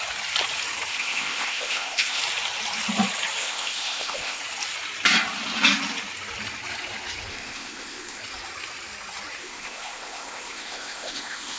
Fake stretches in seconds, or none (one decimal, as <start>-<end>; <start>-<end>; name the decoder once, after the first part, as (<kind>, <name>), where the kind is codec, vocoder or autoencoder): 0.9-2.2 (codec, ZipCodec); 3.4-4.4; 7.3-8.2; 9.4-11.6